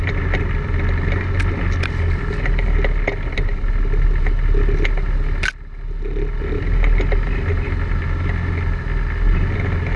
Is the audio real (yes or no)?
yes